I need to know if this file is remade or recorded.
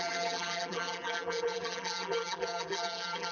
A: remade